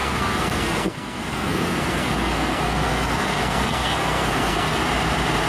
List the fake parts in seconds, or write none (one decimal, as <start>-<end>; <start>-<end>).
0.0-4.8